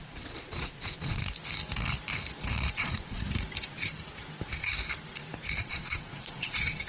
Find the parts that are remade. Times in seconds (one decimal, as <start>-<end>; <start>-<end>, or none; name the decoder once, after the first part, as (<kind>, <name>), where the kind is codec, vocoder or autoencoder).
0.0-1.2 (vocoder, Vocos); 2.7-3.2; 5.6-6.9